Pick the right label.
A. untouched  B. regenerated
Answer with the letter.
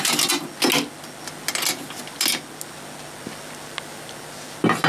A